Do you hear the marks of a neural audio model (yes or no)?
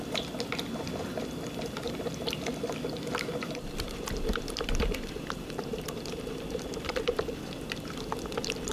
yes